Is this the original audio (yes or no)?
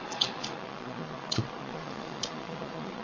no